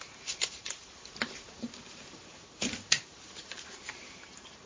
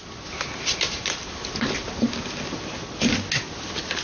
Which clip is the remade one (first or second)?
first